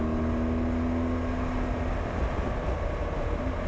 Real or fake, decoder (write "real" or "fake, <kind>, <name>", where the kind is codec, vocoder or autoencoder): real